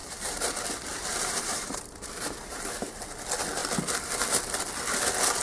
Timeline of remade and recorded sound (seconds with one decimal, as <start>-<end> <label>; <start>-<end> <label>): 0.0-0.5 remade; 0.5-0.9 recorded; 0.9-3.0 remade; 3.0-5.4 recorded